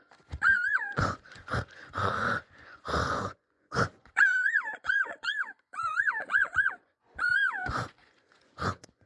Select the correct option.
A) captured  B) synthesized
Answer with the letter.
B